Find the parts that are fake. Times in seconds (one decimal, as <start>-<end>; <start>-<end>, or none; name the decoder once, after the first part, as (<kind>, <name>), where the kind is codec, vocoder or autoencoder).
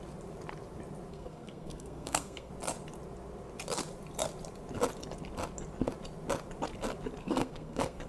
1.1-2.5 (codec, SNAC); 7.2-8.1